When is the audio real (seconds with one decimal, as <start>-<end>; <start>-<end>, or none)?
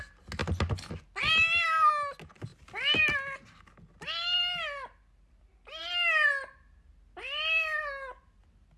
0.0-8.8